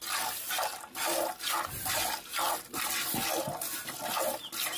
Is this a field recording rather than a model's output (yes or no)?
yes